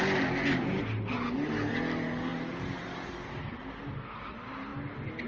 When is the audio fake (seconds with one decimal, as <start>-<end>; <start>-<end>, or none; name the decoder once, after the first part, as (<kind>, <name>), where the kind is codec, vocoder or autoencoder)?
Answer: none